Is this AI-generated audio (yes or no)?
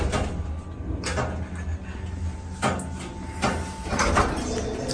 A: no